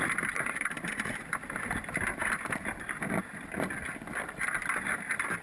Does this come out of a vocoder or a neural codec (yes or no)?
yes